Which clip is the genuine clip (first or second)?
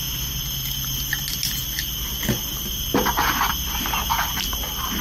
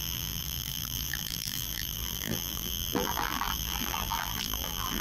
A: first